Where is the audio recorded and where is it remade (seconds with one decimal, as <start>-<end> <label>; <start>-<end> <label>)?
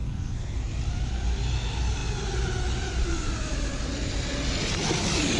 0.0-0.7 remade; 0.7-5.4 recorded